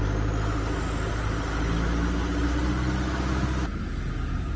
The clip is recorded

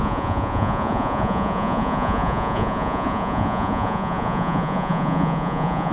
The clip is remade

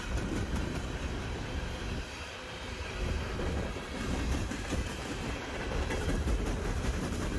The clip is remade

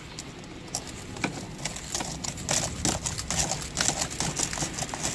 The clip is recorded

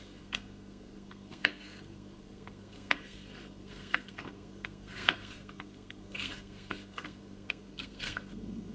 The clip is remade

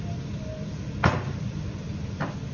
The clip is recorded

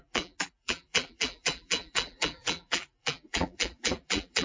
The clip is remade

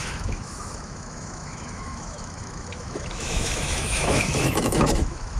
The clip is remade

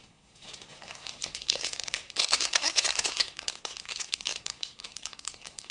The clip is remade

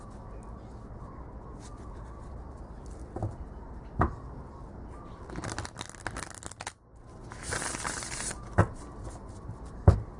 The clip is recorded